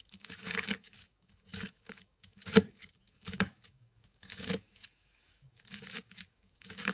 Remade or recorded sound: remade